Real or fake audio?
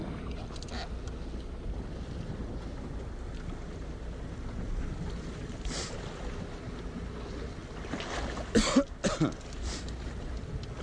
real